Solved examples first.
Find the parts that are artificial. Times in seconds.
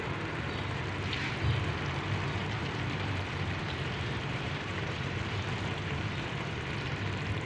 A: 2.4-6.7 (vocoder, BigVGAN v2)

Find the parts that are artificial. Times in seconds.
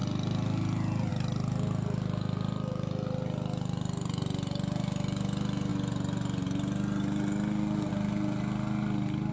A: none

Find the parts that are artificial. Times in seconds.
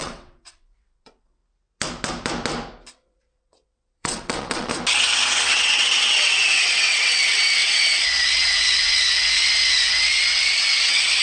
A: 0.0-1.4 (vocoder, WaveNeXt); 2.9-4.7; 5.5-11.2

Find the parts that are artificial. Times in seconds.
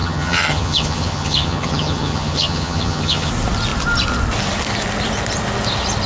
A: 0.0-3.3 (vocoder, HiFi-GAN)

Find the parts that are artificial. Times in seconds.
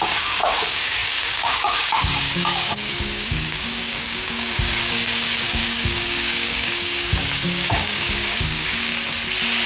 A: 0.0-8.9 (codec, DAC)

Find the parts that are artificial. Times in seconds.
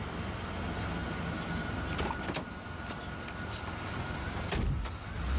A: none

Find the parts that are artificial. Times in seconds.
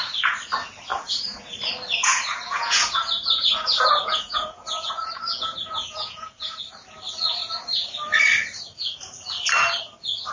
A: 0.9-1.5 (vocoder, Vocos); 2.0-6.6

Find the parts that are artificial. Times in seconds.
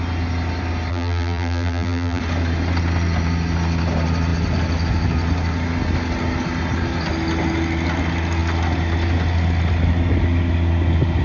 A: 0.9-2.2 (vocoder, BigVGAN v2)